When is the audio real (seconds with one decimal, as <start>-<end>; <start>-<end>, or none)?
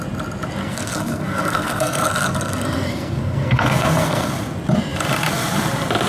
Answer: 0.0-0.6; 4.3-6.1